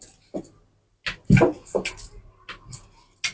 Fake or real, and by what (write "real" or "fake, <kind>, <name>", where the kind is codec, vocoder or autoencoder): real